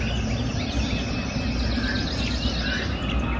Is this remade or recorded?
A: recorded